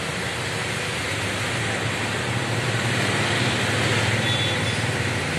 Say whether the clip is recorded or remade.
recorded